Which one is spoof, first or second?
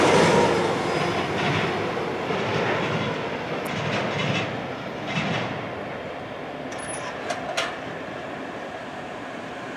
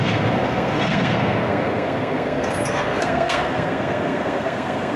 second